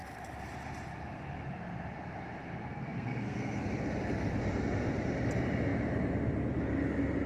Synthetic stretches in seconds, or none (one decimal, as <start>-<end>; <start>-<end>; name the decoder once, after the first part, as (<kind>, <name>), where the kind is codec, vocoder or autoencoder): 2.7-3.7 (codec, SNAC)